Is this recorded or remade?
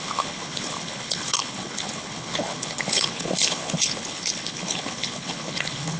remade